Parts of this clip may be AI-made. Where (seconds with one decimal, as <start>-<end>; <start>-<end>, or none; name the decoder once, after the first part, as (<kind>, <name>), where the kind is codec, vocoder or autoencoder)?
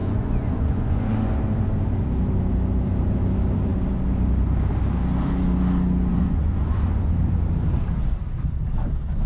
0.0-1.4 (vocoder, Vocos); 6.1-7.1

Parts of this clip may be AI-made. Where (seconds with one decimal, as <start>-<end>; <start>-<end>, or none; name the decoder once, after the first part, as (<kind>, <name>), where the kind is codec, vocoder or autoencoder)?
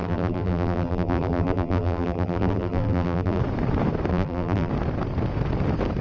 0.0-3.4 (vocoder, BigVGAN v2); 4.1-4.7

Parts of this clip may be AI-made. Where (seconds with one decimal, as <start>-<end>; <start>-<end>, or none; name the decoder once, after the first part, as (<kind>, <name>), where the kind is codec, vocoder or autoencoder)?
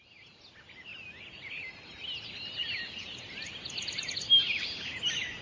none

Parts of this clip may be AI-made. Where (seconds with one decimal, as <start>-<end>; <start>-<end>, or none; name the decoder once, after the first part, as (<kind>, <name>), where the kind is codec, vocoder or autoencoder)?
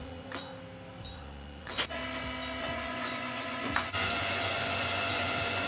0.0-0.5 (vocoder, Vocos); 1.0-2.0; 2.6-5.7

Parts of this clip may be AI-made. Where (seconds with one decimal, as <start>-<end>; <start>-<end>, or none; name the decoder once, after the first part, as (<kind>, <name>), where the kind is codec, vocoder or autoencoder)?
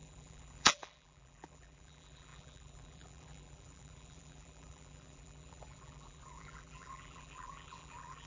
0.0-8.3 (vocoder, BigVGAN v2)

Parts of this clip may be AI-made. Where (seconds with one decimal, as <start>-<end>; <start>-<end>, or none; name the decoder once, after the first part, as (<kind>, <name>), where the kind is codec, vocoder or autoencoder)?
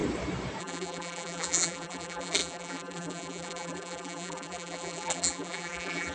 0.6-6.1 (vocoder, BigVGAN v2)